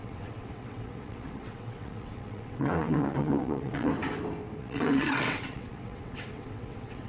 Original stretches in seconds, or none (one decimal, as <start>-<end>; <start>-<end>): 3.9-4.6

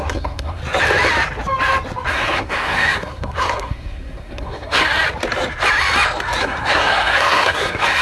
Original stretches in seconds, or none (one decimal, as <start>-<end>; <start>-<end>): 0.6-2.1; 4.8-6.4

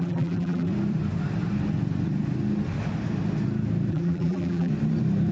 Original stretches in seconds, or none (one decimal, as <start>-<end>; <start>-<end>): 0.7-3.9; 4.7-5.3

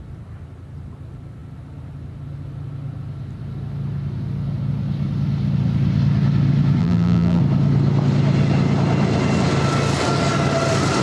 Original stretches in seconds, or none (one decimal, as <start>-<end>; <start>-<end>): 0.0-6.8; 7.4-11.0

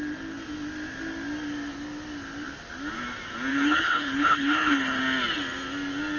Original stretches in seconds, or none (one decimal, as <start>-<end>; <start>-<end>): 0.0-3.5; 5.0-6.2

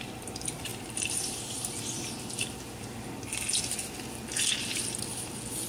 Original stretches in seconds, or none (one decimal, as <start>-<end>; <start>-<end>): 0.0-0.7; 1.6-5.7